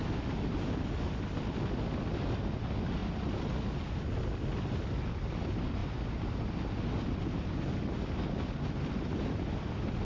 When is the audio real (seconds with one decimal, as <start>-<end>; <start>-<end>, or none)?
0.0-10.0